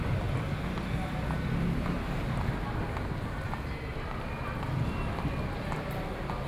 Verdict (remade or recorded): recorded